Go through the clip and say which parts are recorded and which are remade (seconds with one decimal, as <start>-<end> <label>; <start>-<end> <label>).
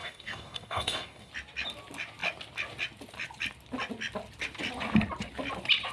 0.0-1.3 remade; 1.3-5.9 recorded